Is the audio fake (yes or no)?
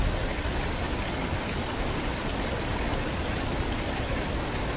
no